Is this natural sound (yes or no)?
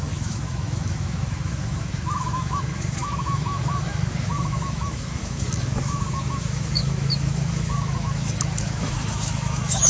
no